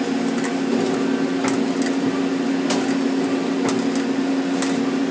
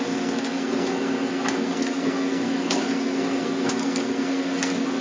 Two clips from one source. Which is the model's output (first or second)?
second